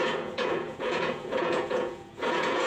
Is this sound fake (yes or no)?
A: yes